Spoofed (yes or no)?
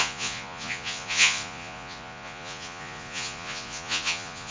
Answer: yes